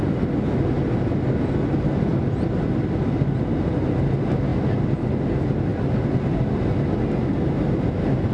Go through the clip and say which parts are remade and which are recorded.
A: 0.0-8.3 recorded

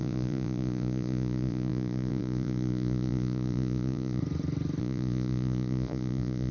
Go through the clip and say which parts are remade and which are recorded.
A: 0.0-4.2 remade; 4.2-4.8 recorded; 4.8-6.5 remade

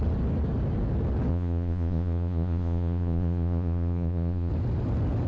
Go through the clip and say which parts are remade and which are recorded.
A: 0.0-1.3 recorded; 1.3-4.5 remade; 4.5-5.3 recorded

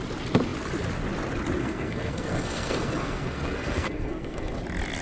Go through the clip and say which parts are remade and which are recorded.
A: 0.0-1.6 recorded; 1.6-4.6 remade; 4.6-5.0 recorded